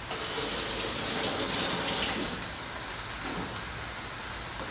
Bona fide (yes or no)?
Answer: yes